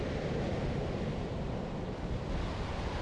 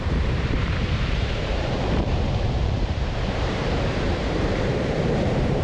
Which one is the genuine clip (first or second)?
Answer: first